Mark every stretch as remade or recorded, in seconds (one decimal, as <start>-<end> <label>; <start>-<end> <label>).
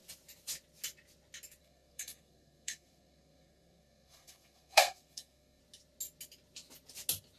0.0-1.6 recorded; 1.6-5.6 remade; 5.6-7.4 recorded